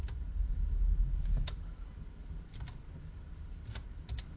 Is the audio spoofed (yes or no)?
no